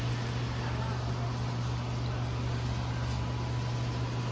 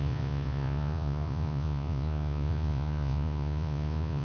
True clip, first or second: first